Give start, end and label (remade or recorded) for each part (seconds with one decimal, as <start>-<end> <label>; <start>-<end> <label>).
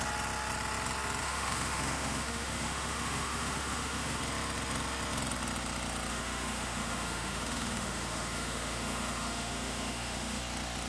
0.0-1.2 recorded; 1.2-4.2 remade; 4.2-6.1 recorded; 6.1-10.4 remade; 10.4-10.9 recorded